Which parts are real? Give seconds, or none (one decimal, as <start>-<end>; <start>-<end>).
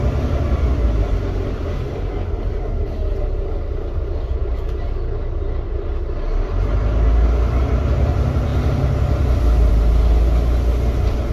0.0-11.3